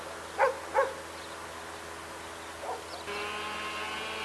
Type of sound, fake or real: real